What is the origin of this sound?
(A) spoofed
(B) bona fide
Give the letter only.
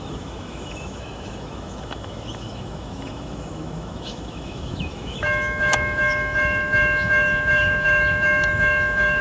A